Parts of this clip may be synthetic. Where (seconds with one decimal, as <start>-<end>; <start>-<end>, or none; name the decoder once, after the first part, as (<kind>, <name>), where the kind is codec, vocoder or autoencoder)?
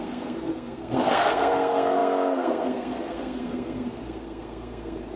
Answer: 0.0-5.2 (codec, SNAC)